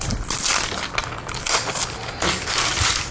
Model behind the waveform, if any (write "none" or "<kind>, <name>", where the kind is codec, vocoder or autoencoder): none